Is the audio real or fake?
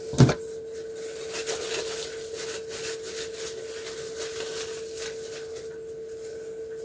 real